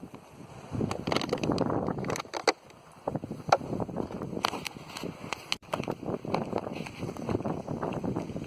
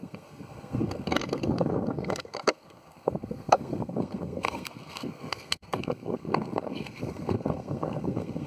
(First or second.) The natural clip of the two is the first